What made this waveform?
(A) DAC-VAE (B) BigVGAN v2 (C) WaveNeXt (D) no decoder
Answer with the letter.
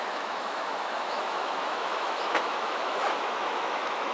A